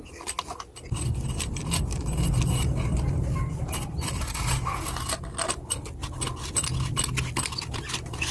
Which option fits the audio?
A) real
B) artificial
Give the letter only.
A